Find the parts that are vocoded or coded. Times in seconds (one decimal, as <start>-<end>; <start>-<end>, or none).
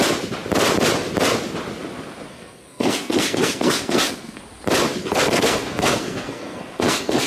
2.3-4.4; 5.0-7.3